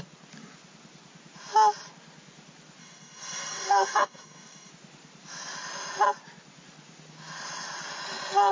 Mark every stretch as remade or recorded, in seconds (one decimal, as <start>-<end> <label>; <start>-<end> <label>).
0.0-2.8 recorded; 2.8-4.7 remade; 4.7-8.5 recorded